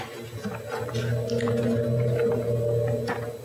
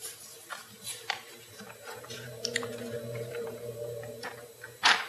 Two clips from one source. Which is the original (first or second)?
first